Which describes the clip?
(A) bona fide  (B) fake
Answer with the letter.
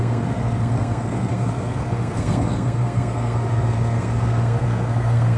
B